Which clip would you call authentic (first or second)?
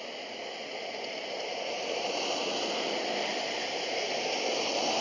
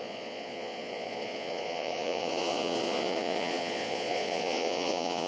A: first